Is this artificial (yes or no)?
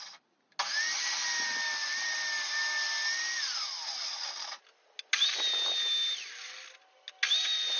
no